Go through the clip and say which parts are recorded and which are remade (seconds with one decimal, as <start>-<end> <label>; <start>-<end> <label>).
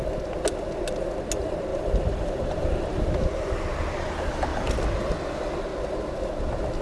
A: 0.0-1.7 recorded; 1.7-3.0 remade; 3.0-4.5 recorded; 4.5-5.0 remade; 5.0-6.8 recorded